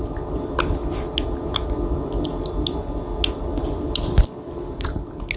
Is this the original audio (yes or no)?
yes